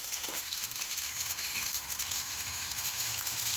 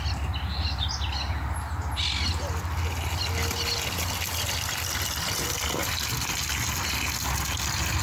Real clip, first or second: second